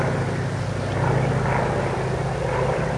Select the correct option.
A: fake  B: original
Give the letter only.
B